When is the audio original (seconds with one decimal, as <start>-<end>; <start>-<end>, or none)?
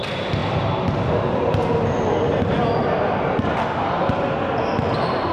0.0-5.3